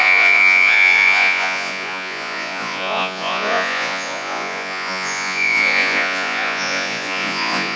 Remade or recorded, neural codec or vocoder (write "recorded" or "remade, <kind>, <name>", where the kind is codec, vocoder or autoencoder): remade, vocoder, Vocos